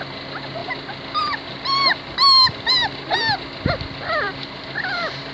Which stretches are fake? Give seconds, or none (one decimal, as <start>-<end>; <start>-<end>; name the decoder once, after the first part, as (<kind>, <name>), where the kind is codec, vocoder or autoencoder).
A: 0.0-0.6 (vocoder, BigVGAN v2); 3.8-5.3